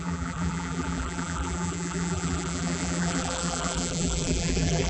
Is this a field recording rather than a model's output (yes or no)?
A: no